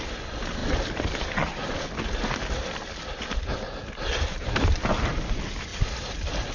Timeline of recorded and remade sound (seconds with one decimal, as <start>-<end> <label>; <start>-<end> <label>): 0.0-6.5 recorded